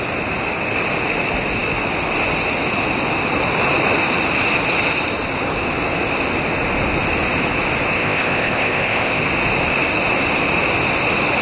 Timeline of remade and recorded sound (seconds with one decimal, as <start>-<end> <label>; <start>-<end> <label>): 0.0-8.0 recorded; 8.0-9.2 remade; 9.2-11.4 recorded